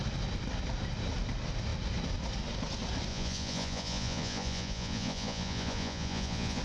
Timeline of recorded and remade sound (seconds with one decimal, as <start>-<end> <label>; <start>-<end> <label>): 0.0-3.1 recorded; 3.1-6.6 remade